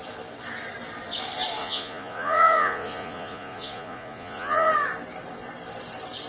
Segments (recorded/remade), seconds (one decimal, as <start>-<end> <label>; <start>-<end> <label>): 0.0-1.6 recorded; 1.6-4.7 remade; 4.7-6.3 recorded